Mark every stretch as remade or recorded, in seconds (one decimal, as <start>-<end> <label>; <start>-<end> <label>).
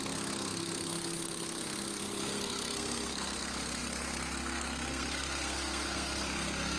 0.0-6.8 remade